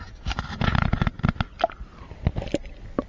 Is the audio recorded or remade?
recorded